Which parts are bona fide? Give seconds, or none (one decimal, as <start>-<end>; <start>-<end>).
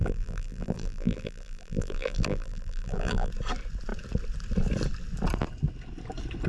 3.3-6.5